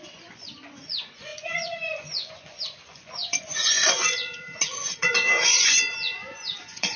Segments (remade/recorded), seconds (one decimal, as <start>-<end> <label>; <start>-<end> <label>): 0.0-7.0 remade